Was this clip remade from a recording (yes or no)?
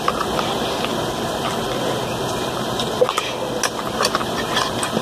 no